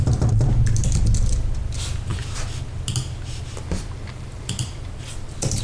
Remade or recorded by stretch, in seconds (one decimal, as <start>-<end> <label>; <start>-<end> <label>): 0.0-5.6 recorded